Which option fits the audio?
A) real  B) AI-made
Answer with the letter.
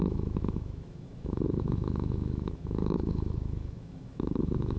B